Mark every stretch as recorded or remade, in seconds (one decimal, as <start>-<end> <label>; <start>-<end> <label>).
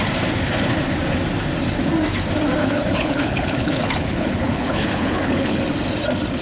0.0-2.6 recorded; 2.6-5.6 remade; 5.6-6.4 recorded